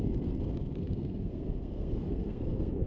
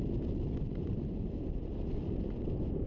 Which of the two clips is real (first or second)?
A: second